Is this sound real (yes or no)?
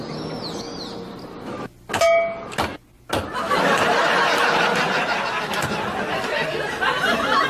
yes